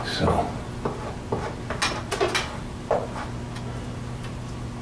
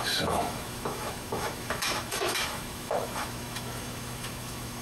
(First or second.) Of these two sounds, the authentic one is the first